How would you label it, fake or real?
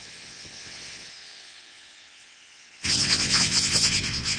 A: fake